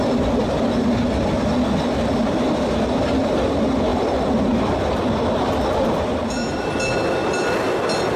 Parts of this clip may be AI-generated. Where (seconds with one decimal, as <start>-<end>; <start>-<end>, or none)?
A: none